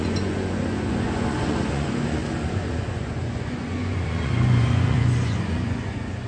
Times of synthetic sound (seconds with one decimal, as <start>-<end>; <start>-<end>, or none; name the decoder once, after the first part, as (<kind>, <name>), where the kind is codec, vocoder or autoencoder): 0.0-6.3 (vocoder, Vocos)